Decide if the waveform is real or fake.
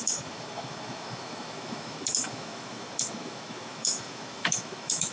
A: fake